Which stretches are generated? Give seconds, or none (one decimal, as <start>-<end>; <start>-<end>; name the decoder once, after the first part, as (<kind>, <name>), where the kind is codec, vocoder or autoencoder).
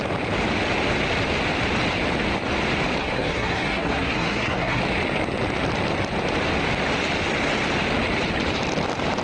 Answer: 3.0-4.8 (codec, SNAC)